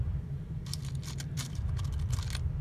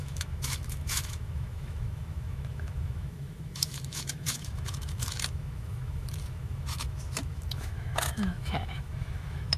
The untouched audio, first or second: first